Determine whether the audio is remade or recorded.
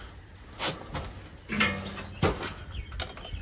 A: recorded